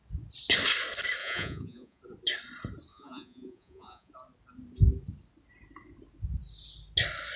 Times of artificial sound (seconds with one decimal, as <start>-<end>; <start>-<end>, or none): 1.2-2.0; 2.9-4.1